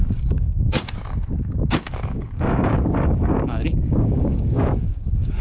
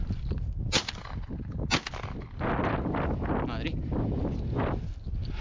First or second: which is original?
second